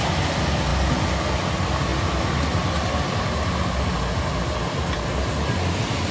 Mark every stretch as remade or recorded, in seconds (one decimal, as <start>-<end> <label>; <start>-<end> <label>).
0.0-6.1 recorded